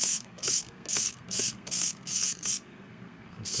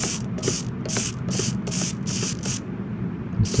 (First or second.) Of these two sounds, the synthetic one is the first